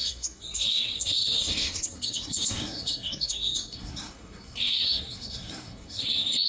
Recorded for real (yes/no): no